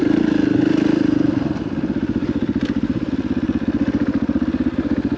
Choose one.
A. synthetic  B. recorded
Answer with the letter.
A